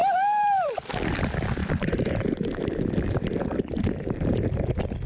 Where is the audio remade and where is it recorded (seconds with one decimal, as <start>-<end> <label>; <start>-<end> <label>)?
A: 0.0-0.9 remade; 0.9-1.6 recorded; 1.6-5.1 remade